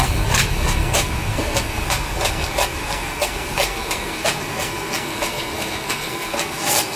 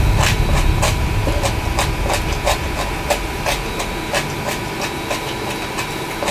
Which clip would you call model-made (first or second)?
first